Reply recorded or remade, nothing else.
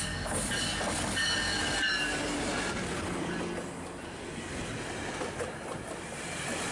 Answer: recorded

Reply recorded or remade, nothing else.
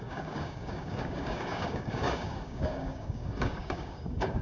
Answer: remade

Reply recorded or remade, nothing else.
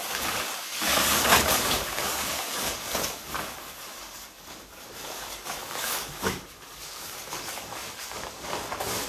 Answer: remade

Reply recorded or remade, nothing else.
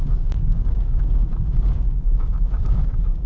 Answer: remade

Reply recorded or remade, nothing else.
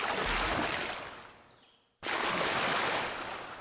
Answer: recorded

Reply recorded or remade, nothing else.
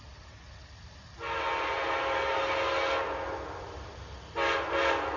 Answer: recorded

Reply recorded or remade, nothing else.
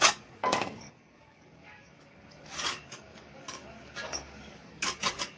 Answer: remade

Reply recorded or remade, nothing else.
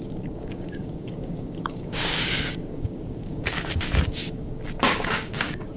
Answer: remade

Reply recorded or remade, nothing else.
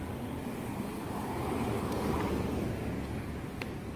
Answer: remade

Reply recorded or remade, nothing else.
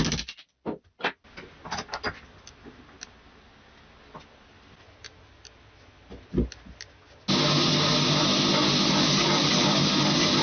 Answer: recorded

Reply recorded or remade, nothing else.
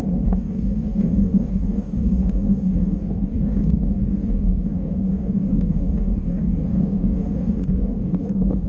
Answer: remade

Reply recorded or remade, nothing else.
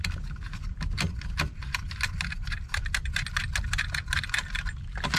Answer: recorded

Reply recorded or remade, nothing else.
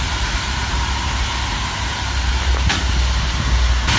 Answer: recorded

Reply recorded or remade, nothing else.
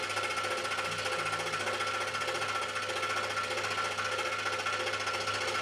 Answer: recorded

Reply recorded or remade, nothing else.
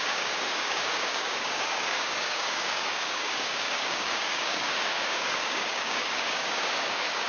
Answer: remade